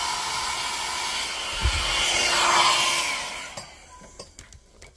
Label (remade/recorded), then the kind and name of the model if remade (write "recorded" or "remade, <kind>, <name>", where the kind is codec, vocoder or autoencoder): recorded